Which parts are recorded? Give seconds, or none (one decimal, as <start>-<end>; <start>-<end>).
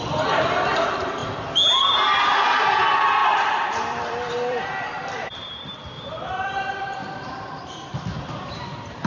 1.2-2.4; 7.0-8.3